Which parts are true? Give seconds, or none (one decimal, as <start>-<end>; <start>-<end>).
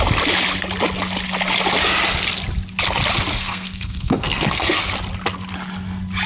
0.0-3.3; 4.8-6.3